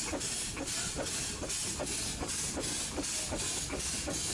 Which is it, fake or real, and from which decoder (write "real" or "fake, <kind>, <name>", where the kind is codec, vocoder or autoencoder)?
real